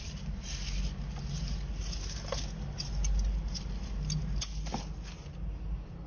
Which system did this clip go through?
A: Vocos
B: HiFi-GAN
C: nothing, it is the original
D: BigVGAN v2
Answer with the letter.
C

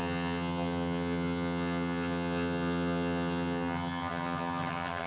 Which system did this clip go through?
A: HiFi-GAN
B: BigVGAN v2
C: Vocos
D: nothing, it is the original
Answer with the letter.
A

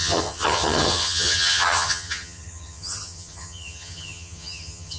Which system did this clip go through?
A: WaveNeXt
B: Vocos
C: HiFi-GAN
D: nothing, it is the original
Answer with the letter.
C